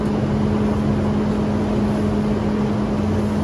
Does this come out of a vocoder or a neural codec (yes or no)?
no